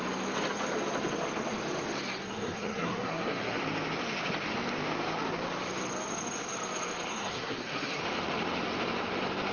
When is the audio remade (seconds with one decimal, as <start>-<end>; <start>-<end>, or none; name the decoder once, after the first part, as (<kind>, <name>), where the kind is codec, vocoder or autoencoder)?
2.2-3.6 (codec, SNAC); 7.1-8.0

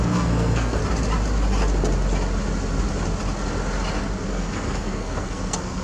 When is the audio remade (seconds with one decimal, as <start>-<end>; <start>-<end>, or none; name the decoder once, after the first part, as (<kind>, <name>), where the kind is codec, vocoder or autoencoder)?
0.0-0.8 (codec, SNAC); 4.3-5.8

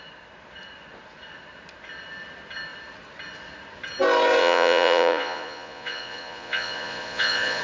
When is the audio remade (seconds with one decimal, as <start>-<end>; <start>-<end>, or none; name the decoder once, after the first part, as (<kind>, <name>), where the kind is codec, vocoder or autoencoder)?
4.4-7.6 (vocoder, Vocos)

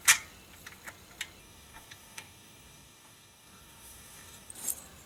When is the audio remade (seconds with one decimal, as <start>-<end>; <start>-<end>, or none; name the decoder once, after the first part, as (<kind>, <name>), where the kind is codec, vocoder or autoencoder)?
1.4-4.5 (codec, DAC)

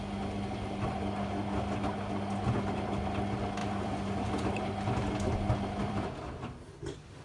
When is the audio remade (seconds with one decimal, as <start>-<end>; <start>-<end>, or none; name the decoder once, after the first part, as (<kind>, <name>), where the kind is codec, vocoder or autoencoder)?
3.6-4.6 (vocoder, BigVGAN v2); 5.8-7.2

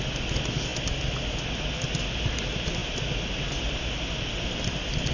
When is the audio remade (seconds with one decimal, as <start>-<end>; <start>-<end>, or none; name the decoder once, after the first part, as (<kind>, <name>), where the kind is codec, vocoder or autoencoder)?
none